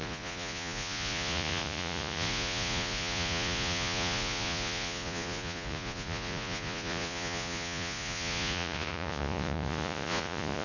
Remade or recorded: remade